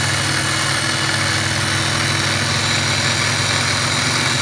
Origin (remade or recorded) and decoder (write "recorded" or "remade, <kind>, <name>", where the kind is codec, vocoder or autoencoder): recorded